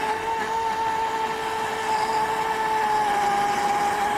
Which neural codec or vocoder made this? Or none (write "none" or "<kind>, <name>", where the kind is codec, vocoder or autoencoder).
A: none